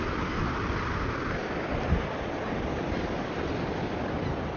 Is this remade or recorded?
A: remade